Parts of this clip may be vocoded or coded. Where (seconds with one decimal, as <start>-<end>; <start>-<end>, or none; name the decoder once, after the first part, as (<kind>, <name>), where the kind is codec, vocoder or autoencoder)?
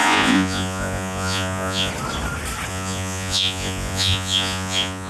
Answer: 0.0-1.9 (vocoder, Vocos); 2.7-5.1